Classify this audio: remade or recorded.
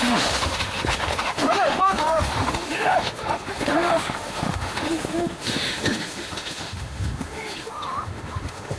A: remade